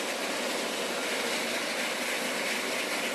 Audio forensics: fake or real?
real